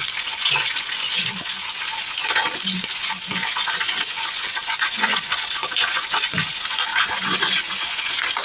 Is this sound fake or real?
fake